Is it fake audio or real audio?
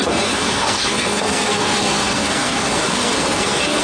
fake